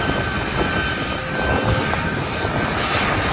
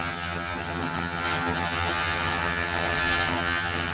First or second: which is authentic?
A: first